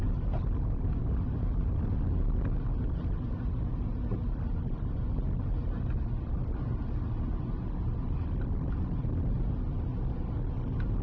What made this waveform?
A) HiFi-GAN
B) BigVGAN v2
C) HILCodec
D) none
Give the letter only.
D